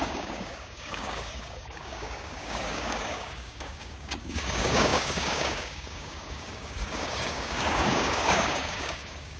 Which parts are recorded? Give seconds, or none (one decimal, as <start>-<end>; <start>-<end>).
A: none